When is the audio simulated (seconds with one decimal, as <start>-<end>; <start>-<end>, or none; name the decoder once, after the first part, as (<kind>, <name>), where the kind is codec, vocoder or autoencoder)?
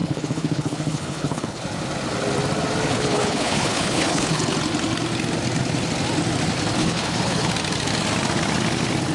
0.0-1.6 (codec, HILCodec); 2.9-4.4; 6.8-7.5